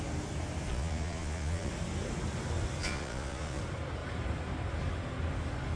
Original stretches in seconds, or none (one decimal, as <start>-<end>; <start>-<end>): 0.0-0.7; 1.7-2.8; 3.6-5.8